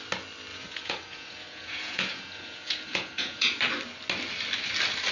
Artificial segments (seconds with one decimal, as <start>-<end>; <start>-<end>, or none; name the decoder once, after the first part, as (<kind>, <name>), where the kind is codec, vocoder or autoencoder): 0.5-3.6 (vocoder, Vocos)